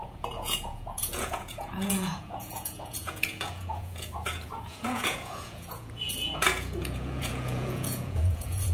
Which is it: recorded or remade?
remade